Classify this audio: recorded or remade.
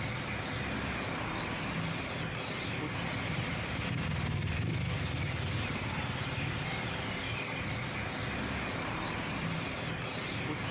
recorded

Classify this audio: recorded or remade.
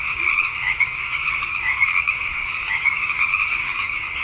remade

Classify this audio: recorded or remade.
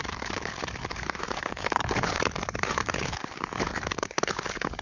remade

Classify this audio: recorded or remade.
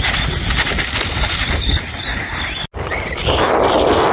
recorded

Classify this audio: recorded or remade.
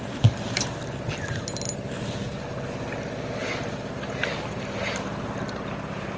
recorded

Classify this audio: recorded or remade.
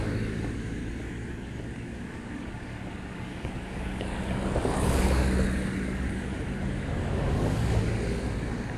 remade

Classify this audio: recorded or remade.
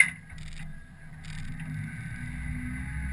recorded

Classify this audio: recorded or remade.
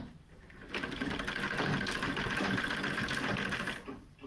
recorded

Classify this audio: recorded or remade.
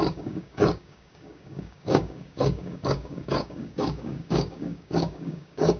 remade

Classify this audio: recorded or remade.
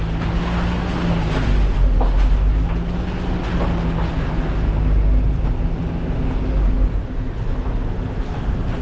recorded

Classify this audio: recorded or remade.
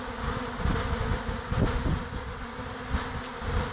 recorded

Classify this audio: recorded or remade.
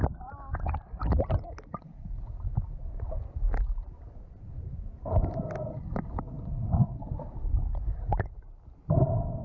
recorded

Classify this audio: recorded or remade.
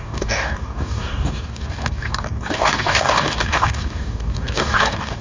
remade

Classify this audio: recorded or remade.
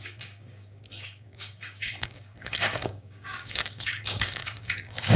remade